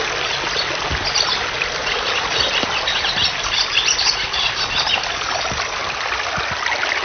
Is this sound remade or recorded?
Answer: recorded